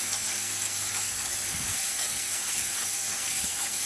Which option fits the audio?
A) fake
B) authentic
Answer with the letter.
A